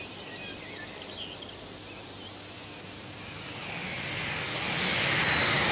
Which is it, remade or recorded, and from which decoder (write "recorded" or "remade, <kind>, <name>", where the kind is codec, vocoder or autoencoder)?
recorded